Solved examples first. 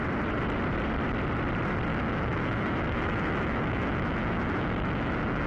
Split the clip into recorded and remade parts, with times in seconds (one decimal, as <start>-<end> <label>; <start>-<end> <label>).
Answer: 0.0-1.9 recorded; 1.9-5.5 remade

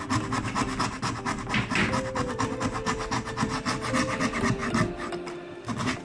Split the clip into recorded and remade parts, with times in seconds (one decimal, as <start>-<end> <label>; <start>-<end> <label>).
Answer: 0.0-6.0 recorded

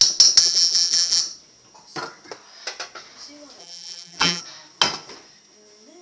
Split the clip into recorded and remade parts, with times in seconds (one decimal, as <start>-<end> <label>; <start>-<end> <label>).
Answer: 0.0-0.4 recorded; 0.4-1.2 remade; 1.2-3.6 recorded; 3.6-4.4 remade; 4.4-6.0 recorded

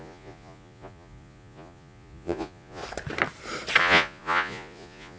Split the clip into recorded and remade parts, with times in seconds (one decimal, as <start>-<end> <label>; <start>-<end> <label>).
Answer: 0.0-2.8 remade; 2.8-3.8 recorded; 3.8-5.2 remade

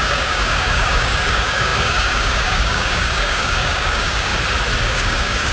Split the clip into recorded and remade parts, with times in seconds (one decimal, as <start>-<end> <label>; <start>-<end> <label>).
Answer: 0.0-4.3 remade; 4.3-4.8 recorded; 4.8-5.5 remade

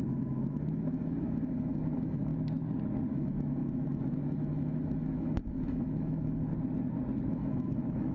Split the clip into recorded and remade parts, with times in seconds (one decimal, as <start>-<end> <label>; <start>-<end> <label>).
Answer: 0.0-2.3 remade; 2.3-3.1 recorded; 3.1-6.5 remade; 6.5-7.3 recorded; 7.3-8.1 remade

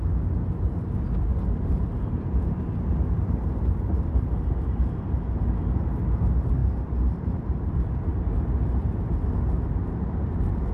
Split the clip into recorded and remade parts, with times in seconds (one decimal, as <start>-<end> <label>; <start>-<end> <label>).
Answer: 0.0-1.3 recorded; 1.3-4.5 remade; 4.5-6.6 recorded; 6.6-7.7 remade; 7.7-10.7 recorded

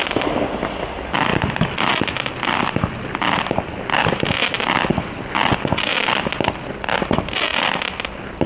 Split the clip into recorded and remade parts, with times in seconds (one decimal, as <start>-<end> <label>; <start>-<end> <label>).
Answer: 0.0-8.5 recorded